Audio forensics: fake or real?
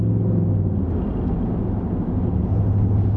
real